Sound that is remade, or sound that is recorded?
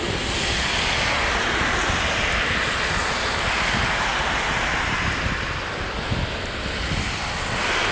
recorded